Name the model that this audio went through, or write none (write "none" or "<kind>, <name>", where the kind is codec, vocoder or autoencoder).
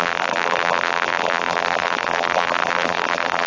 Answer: vocoder, BigVGAN v2